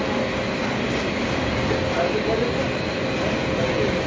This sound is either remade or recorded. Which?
recorded